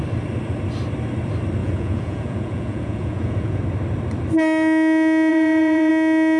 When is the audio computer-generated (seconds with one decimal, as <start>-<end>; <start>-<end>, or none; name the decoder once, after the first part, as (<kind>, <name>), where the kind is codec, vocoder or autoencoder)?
1.6-3.6 (vocoder, Vocos); 5.3-5.9